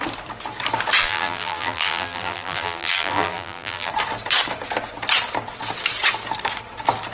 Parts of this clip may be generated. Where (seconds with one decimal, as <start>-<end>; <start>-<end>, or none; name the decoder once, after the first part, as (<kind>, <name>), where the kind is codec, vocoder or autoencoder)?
1.0-3.9 (vocoder, BigVGAN v2)